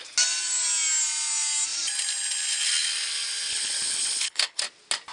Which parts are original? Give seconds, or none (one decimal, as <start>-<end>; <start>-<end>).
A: 0.0-3.5; 4.6-5.1